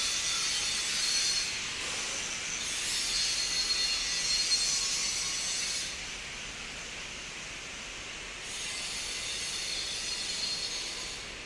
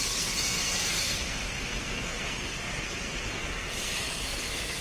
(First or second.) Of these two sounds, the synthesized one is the second